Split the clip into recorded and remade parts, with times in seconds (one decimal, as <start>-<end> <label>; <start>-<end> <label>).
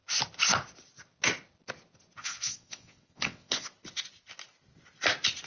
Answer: 0.0-2.2 recorded; 2.2-3.7 remade; 3.7-5.5 recorded